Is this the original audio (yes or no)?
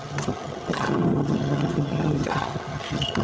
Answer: no